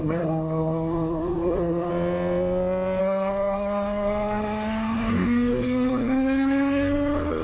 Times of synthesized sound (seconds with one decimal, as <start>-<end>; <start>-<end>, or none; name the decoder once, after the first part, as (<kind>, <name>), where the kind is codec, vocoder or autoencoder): 0.0-1.9 (codec, SNAC); 3.0-7.4